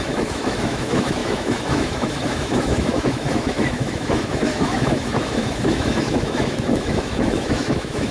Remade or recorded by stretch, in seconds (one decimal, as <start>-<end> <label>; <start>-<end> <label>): 0.0-8.1 remade